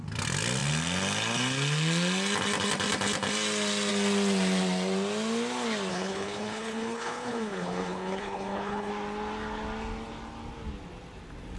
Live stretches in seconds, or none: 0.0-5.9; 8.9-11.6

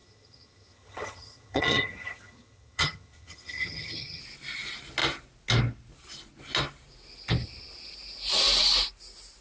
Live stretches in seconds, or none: 4.2-9.4

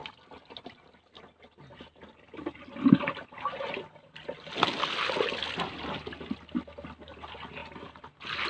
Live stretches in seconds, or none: 0.0-8.5